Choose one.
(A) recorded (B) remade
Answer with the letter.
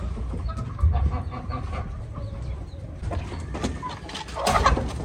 A